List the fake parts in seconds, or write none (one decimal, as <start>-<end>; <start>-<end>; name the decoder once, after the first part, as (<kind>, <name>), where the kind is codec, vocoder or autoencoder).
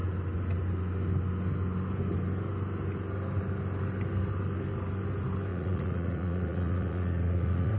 5.5-7.8 (vocoder, Vocos)